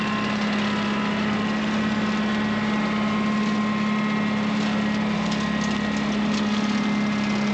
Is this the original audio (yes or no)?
yes